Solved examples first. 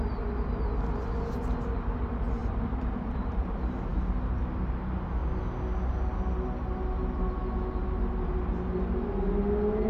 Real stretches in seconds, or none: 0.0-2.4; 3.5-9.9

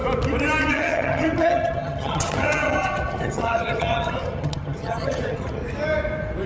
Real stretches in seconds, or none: 0.0-0.7; 5.6-6.5

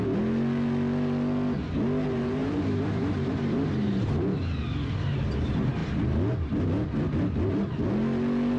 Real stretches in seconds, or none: 0.0-2.4; 3.9-8.6

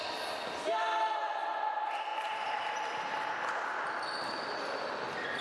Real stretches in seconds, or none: 0.0-2.1; 3.3-5.4

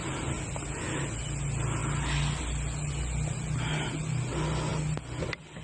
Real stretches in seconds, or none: 0.0-5.6

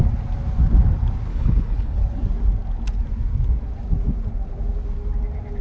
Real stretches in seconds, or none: 0.0-1.3; 2.0-5.6